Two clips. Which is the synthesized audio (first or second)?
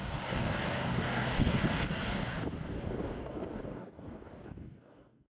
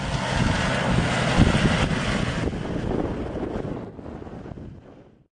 first